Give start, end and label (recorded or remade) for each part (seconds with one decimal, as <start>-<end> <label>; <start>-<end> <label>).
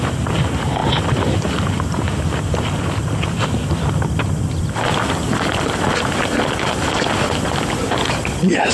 0.0-8.7 recorded